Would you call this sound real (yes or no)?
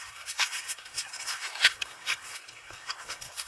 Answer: no